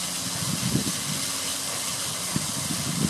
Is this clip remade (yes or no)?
no